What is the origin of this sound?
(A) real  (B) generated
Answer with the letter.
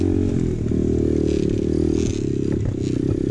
A